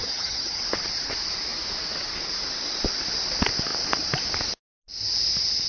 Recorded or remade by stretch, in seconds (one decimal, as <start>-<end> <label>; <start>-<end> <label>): 0.0-0.6 remade; 0.6-5.7 recorded